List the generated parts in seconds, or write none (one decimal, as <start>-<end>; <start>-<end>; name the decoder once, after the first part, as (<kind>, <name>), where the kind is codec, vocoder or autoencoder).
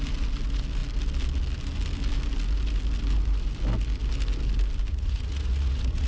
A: 4.9-6.1 (vocoder, Vocos)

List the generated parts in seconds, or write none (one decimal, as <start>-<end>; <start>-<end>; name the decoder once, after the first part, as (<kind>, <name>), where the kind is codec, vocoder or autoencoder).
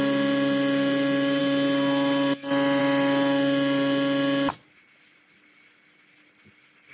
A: none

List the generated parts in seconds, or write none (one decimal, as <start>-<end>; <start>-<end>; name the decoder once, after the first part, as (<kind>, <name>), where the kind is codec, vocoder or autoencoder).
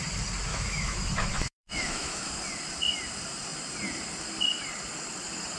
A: 0.5-2.3 (autoencoder, DAC-VAE)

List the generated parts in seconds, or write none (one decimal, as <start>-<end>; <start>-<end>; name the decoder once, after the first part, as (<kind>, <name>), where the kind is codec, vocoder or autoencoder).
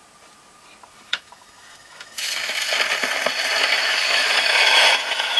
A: 0.9-2.5 (autoencoder, DAC-VAE); 3.6-5.4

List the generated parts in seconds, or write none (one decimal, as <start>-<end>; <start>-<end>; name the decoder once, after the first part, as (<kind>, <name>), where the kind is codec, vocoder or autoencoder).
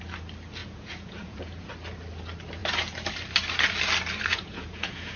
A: 0.6-1.7 (vocoder, Vocos); 4.3-5.2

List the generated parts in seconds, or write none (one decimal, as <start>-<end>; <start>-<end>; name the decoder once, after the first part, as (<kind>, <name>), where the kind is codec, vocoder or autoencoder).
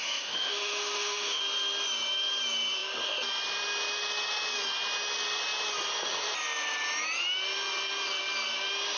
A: 0.0-1.4 (autoencoder, DAC-VAE)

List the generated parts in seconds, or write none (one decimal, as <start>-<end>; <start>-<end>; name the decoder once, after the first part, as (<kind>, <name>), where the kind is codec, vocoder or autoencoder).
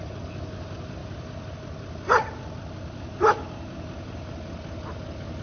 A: none